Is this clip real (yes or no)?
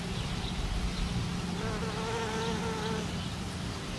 yes